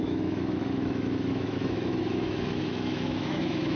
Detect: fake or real fake